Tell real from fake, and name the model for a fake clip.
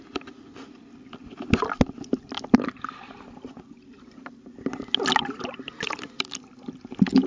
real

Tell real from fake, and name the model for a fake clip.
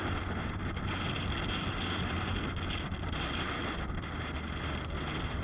real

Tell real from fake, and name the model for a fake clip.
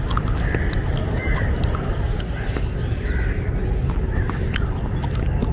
real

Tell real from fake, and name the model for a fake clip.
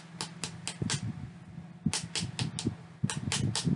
real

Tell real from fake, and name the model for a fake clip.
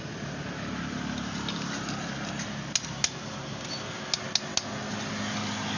real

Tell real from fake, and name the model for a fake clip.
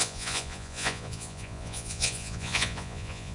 fake, vocoder, Vocos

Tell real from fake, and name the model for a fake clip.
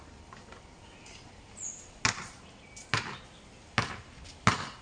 real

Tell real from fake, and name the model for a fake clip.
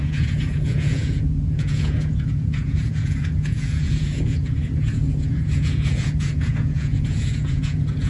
fake, vocoder, Vocos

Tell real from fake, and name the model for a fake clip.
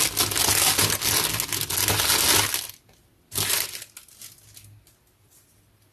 real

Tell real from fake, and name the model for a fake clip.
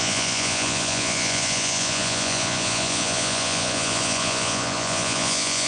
fake, vocoder, Vocos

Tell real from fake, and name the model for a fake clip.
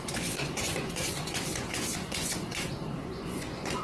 fake, vocoder, Vocos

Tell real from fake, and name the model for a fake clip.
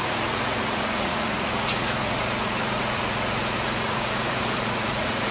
fake, vocoder, Vocos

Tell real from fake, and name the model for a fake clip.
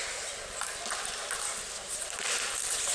real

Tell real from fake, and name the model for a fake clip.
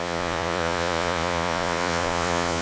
fake, vocoder, Vocos